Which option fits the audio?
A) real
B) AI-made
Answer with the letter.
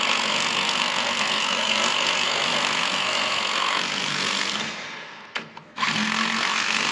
B